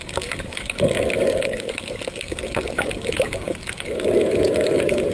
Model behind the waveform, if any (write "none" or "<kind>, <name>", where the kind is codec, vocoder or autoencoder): codec, DAC